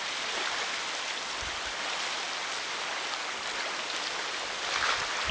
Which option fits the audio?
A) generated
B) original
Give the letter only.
B